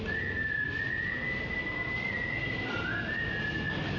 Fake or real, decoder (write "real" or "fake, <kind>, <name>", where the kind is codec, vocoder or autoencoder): real